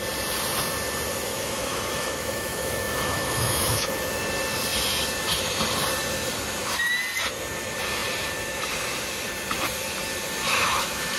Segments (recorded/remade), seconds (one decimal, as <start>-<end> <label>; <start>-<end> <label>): 0.0-1.3 recorded; 1.3-3.9 remade; 3.9-10.4 recorded; 10.4-11.2 remade